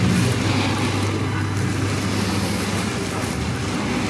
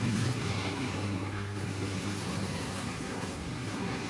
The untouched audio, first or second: first